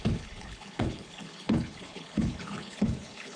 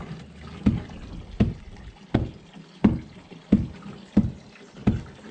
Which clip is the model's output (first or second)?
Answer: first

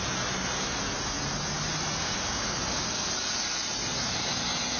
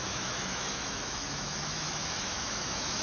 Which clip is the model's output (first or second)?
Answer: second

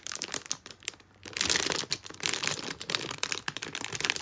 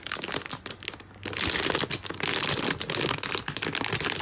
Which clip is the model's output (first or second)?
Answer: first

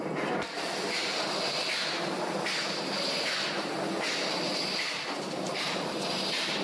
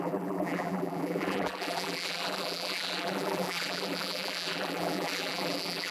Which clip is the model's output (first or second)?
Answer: second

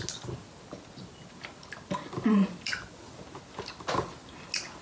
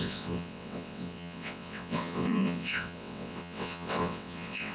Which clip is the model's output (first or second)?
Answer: second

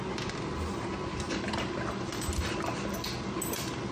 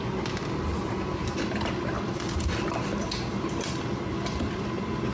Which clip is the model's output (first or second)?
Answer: second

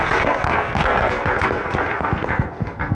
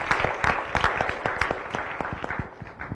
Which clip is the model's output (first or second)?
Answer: first